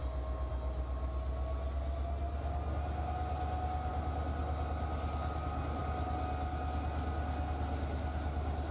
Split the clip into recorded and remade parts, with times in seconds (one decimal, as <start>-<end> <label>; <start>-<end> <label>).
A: 0.0-8.7 recorded